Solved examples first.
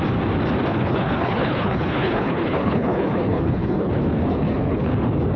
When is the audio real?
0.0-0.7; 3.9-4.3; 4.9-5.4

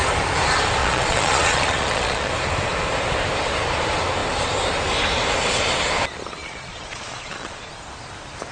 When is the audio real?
0.0-0.8; 2.3-6.4; 7.7-8.5